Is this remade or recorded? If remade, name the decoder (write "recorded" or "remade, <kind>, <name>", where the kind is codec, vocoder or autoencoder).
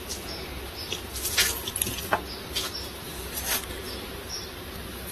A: recorded